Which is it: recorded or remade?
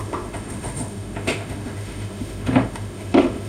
remade